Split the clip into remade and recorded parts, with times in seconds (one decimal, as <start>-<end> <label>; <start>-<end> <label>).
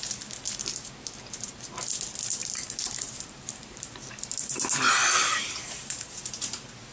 0.0-2.4 recorded; 2.4-4.1 remade; 4.1-5.2 recorded; 5.2-6.3 remade; 6.3-6.9 recorded